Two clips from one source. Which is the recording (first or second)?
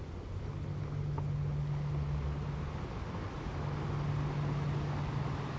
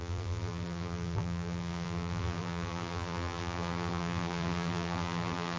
first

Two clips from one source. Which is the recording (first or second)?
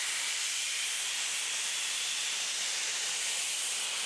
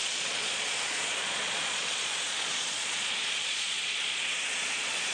first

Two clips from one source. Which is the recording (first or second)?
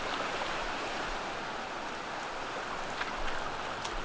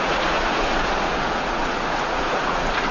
first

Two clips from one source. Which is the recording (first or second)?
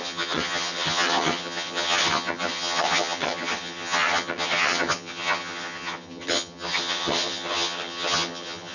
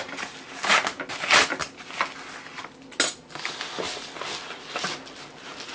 second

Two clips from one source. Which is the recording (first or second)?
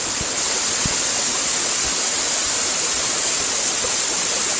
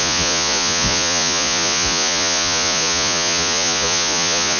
first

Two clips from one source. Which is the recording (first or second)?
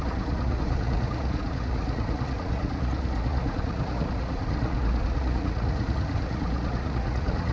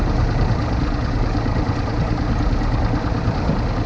second